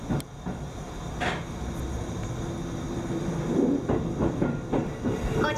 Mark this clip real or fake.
real